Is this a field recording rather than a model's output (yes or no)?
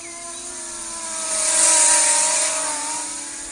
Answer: yes